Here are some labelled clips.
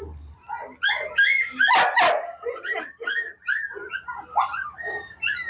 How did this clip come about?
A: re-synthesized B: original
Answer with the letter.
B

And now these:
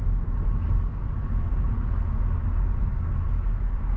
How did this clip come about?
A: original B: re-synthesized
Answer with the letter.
A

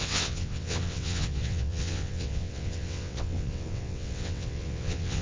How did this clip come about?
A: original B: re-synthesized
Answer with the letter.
B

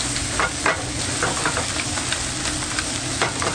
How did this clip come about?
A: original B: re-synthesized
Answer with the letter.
A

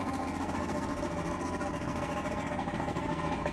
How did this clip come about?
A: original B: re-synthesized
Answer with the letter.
B